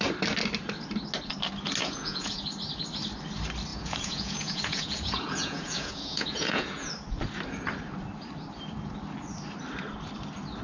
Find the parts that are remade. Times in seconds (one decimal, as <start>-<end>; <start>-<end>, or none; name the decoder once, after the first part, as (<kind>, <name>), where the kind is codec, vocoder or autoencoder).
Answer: 1.8-2.4 (vocoder, Vocos); 3.7-6.9